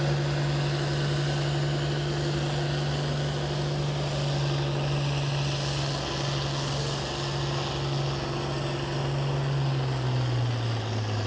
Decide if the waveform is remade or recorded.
recorded